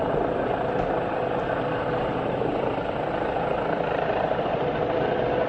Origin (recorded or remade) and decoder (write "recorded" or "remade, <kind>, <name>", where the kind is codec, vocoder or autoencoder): remade, vocoder, BigVGAN v2